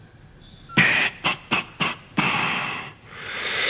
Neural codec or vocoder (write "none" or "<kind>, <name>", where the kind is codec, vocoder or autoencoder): none